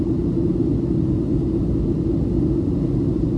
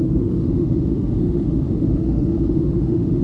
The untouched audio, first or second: first